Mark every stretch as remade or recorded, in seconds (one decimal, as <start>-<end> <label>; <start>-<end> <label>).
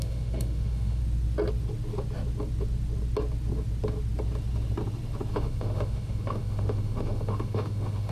0.0-1.0 remade; 1.0-5.3 recorded; 5.3-8.1 remade